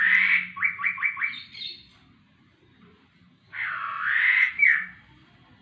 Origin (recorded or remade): recorded